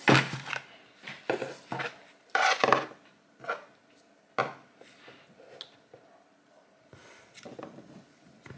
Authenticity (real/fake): real